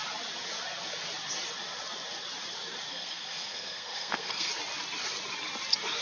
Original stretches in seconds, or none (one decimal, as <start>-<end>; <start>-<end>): 0.0-2.9; 4.5-6.0